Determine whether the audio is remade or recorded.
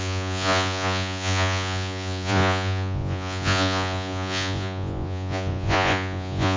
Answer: remade